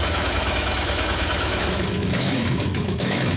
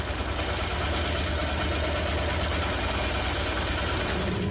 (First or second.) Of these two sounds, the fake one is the first